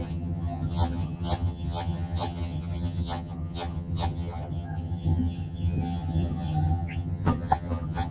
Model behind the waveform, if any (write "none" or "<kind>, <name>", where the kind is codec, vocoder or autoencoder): vocoder, HiFi-GAN